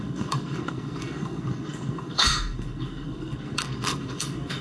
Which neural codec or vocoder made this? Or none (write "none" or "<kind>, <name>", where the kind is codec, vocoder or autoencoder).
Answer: codec, SNAC